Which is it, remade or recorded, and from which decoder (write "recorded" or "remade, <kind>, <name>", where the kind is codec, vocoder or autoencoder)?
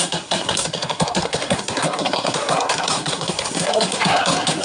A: remade, codec, SNAC